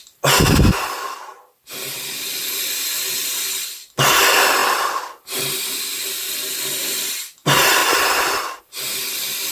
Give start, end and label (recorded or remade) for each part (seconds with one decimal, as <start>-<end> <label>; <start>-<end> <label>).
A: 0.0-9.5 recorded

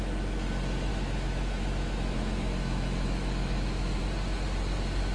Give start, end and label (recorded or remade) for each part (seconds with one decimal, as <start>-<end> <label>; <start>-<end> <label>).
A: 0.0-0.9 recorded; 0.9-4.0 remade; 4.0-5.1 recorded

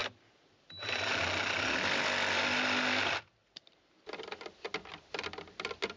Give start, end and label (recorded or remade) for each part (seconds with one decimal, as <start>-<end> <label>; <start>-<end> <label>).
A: 0.0-6.0 recorded